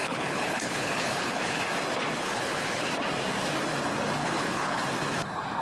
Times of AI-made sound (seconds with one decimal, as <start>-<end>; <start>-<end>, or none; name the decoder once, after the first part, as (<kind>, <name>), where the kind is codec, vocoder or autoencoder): 0.0-1.6 (codec, HILCodec); 2.2-2.9; 4.2-4.8